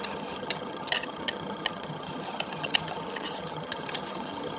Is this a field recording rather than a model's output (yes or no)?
no